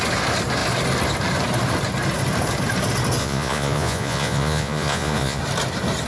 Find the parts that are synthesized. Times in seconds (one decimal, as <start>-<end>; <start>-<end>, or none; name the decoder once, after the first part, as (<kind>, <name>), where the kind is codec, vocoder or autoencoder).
3.2-5.4 (vocoder, Vocos)